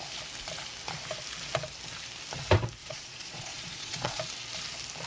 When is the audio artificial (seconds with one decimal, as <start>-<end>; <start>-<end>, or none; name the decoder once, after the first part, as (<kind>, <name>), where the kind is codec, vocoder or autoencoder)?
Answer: 2.8-4.2 (vocoder, Vocos)